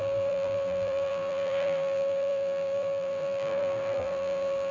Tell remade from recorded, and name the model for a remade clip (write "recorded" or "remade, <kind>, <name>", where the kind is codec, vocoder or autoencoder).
remade, vocoder, BigVGAN v2